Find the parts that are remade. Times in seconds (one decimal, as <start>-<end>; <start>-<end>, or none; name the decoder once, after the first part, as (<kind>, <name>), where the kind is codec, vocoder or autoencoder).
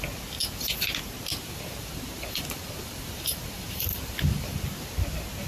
1.3-4.6 (vocoder, BigVGAN v2)